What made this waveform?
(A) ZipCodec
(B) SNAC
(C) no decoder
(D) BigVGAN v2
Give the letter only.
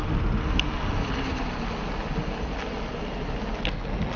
C